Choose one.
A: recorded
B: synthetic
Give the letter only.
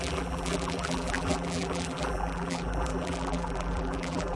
B